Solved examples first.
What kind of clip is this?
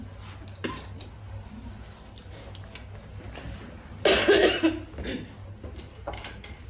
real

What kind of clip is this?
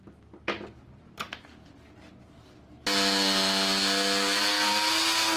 real